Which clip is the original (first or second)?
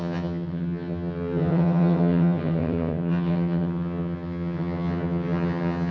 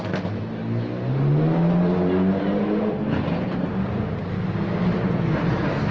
second